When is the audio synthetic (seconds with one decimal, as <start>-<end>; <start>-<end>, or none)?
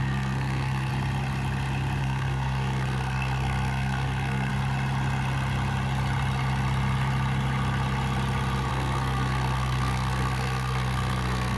0.0-0.9; 2.0-4.5; 8.7-11.6